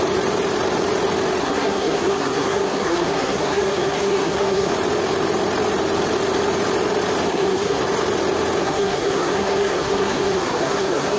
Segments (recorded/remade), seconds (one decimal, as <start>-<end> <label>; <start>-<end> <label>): 0.0-1.4 recorded; 1.4-4.7 remade; 4.7-7.3 recorded; 7.3-7.8 remade; 7.8-8.6 recorded; 8.6-11.2 remade